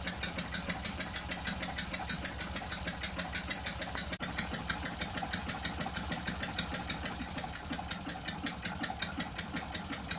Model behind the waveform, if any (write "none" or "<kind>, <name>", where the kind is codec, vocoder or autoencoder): vocoder, BigVGAN v2